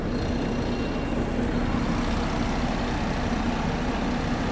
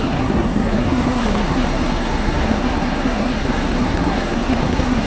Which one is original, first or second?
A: first